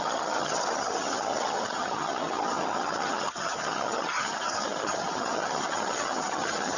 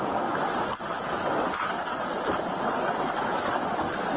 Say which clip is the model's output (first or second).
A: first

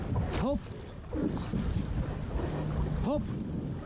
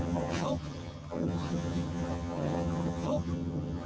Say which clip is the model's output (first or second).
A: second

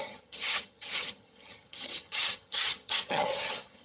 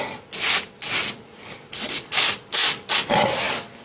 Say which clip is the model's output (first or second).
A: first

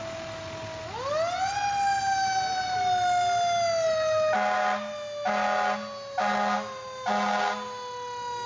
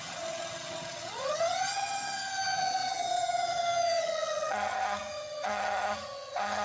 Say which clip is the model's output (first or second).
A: second